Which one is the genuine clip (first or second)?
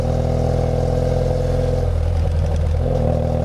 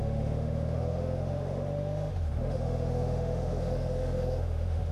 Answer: first